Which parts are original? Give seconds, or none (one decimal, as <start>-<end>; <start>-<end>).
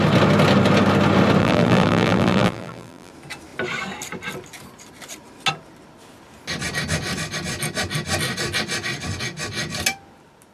0.0-1.4; 3.1-10.5